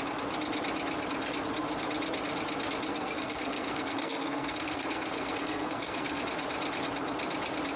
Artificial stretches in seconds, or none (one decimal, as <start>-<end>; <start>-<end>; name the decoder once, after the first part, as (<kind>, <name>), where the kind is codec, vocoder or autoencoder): 2.9-6.2 (codec, SNAC)